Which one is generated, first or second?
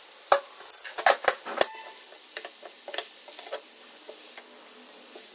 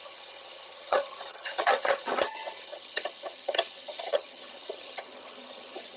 second